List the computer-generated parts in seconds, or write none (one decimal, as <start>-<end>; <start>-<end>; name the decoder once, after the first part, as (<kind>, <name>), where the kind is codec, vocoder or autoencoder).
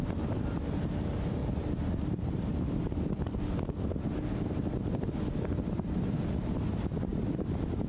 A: 0.0-7.9 (vocoder, BigVGAN v2)